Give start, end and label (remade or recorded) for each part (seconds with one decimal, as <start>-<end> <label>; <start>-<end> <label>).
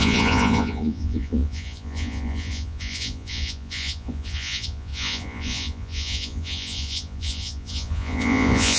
0.0-8.8 remade